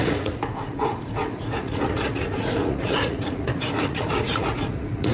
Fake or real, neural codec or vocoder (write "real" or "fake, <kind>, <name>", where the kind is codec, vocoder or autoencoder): fake, vocoder, Vocos